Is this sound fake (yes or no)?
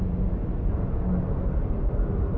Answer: no